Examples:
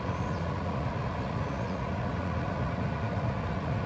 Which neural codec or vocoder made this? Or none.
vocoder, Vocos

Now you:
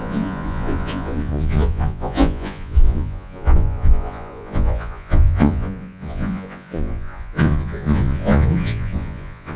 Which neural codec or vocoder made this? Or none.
vocoder, Vocos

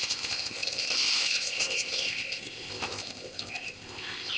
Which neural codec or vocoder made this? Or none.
codec, ZipCodec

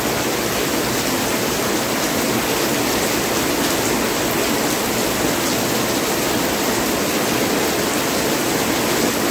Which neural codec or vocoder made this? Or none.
none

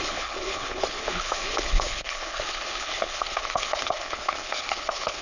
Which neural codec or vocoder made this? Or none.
codec, HILCodec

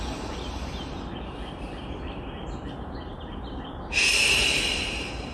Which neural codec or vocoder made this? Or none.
vocoder, BigVGAN v2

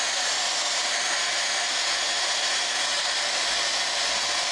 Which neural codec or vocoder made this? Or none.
none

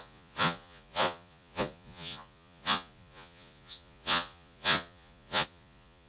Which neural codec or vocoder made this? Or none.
vocoder, Vocos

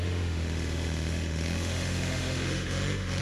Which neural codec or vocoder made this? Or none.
autoencoder, DAC-VAE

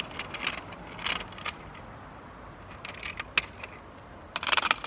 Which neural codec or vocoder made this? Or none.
none